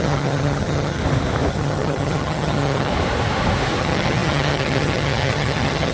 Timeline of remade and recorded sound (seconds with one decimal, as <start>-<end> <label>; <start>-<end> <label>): 0.0-1.0 remade; 1.0-1.5 recorded; 1.5-2.9 remade; 2.9-3.8 recorded; 3.8-5.9 remade